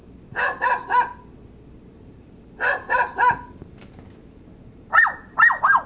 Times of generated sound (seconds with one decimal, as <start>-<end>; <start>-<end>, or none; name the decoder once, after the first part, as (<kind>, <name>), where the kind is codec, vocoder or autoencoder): 1.9-5.4 (vocoder, BigVGAN v2)